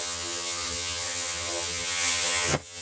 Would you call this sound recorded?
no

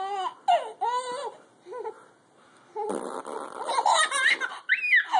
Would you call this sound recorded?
yes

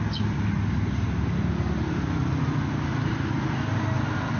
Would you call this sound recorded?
yes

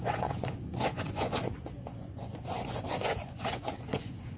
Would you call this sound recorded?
no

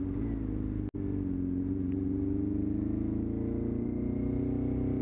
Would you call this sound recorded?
yes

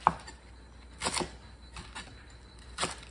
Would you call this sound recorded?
yes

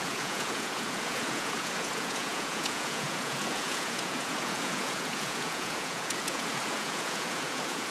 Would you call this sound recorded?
no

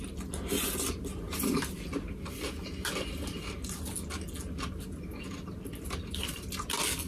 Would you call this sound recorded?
yes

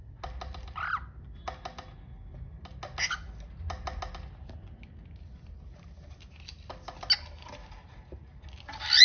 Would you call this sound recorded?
yes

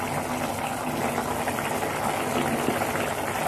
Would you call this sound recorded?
yes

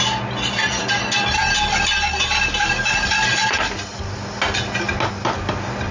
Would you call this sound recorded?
yes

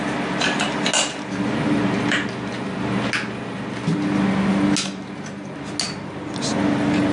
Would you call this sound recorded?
yes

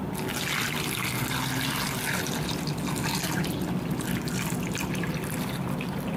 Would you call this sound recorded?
yes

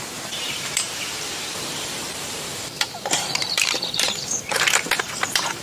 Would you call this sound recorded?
no